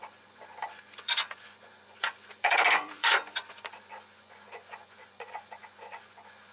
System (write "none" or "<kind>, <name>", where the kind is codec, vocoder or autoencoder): vocoder, Vocos